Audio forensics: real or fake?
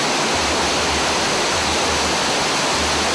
real